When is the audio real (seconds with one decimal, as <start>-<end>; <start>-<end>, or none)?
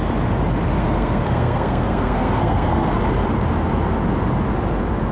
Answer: 0.0-0.8; 3.0-5.1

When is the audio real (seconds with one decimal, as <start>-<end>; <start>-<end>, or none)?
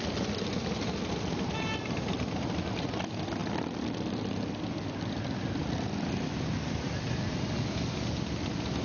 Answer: 0.0-8.8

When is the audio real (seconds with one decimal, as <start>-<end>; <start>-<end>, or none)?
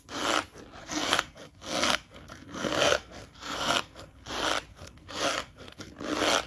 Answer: 0.0-0.8; 4.3-4.7; 5.9-6.5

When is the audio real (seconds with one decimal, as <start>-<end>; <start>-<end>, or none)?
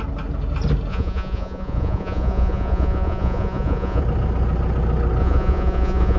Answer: 0.0-0.9; 4.0-5.2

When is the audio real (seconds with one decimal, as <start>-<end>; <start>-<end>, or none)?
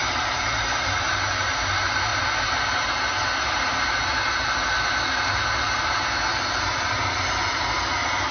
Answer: 1.1-8.3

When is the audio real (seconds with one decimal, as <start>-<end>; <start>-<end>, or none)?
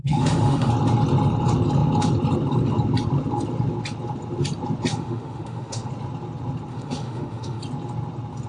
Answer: 0.7-4.9; 5.9-6.7; 7.6-8.5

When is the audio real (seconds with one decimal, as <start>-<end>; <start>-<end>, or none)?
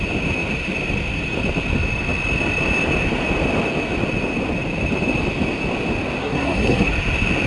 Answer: 0.0-6.2; 6.9-7.5